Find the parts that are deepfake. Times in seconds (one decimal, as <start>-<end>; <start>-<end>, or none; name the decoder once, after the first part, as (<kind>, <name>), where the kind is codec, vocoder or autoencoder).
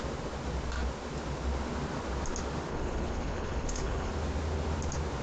2.7-4.1 (codec, HILCodec)